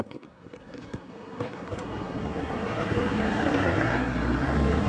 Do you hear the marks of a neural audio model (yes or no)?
yes